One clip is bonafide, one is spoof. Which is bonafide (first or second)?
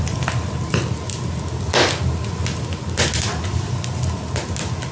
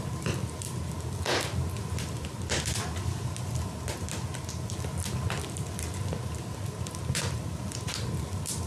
first